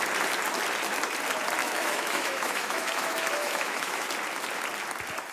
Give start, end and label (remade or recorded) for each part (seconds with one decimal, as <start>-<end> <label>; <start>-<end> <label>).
0.0-1.6 recorded; 1.6-4.1 remade; 4.1-5.3 recorded